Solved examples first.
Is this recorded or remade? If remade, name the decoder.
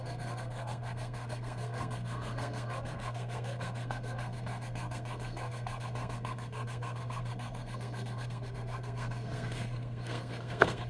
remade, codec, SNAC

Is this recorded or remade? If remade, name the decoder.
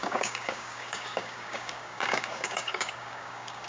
remade, codec, DAC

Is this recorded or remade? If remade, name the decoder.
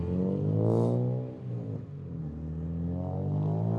recorded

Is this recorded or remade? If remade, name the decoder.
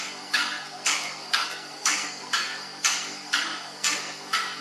remade, codec, SNAC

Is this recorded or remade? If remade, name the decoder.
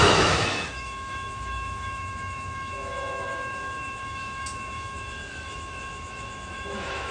remade, autoencoder, DAC-VAE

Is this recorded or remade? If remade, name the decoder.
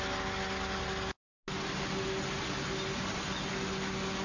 recorded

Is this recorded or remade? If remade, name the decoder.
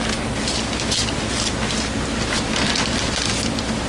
recorded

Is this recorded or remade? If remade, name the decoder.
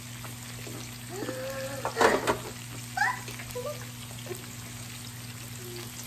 recorded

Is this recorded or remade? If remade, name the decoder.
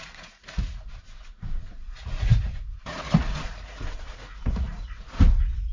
remade, vocoder, Vocos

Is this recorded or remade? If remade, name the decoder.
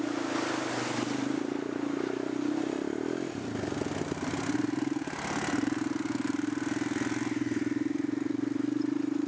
recorded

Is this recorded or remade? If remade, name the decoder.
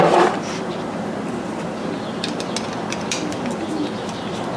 recorded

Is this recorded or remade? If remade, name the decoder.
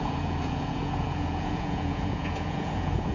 remade, vocoder, Vocos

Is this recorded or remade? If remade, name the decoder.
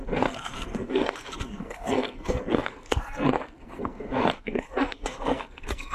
remade, codec, SNAC